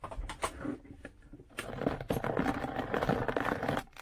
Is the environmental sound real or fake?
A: real